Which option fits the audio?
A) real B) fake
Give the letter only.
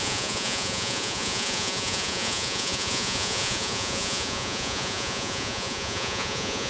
B